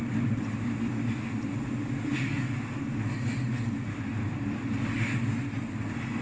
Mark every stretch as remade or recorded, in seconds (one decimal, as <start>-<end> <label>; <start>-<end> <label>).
0.0-6.2 recorded